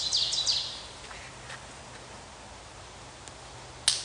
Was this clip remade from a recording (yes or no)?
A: no